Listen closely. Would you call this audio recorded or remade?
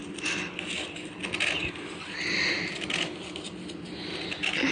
recorded